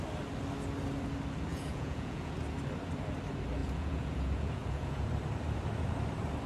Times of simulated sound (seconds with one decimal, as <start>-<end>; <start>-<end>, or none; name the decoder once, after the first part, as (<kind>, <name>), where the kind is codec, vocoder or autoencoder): 1.5-2.3 (vocoder, Vocos); 3.6-5.1

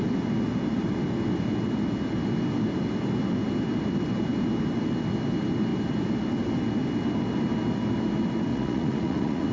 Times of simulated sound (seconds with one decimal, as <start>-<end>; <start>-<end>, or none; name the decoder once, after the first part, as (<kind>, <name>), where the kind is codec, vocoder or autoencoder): 8.5-9.5 (vocoder, Vocos)

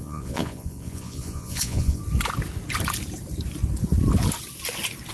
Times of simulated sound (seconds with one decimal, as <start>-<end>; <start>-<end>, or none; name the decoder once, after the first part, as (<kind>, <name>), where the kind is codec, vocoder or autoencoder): 0.0-2.0 (vocoder, Vocos)

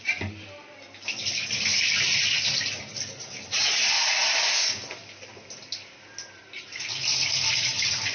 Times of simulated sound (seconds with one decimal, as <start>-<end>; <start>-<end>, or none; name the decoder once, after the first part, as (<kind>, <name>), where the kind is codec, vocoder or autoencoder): none